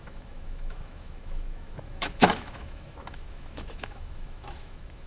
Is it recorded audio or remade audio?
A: remade